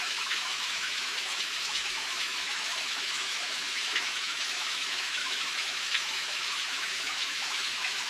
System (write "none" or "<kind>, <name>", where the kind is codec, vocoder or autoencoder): autoencoder, DAC-VAE